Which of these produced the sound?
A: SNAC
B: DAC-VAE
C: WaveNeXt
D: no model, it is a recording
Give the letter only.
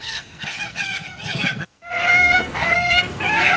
A